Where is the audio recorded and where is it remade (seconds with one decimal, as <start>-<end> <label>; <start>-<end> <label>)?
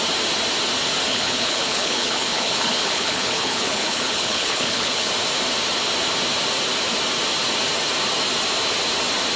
0.0-1.1 recorded; 1.1-5.1 remade; 5.1-9.4 recorded